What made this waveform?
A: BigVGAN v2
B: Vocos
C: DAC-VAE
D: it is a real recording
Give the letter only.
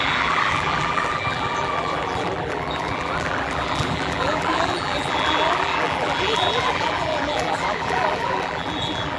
A